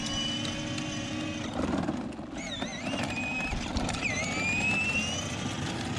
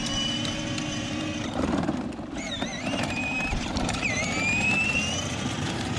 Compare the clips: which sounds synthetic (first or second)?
second